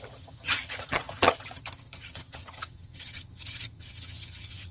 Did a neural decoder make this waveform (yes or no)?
yes